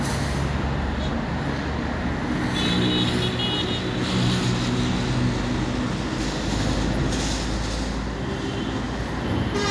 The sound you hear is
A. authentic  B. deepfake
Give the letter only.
A